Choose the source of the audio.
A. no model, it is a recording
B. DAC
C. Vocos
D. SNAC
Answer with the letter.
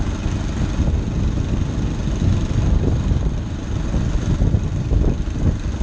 A